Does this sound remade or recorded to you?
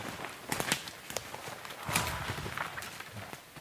recorded